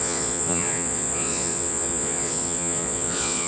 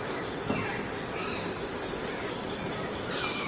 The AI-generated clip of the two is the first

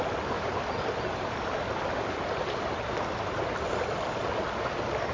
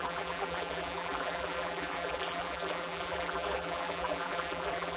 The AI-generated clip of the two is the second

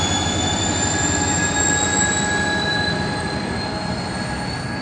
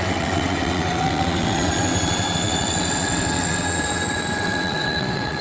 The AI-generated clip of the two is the second